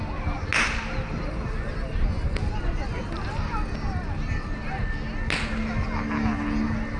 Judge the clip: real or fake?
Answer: real